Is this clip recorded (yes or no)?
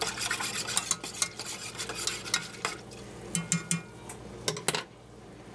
yes